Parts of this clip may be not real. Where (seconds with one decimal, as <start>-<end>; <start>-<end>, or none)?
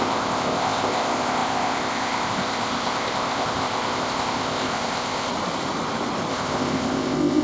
0.0-5.3; 6.3-7.4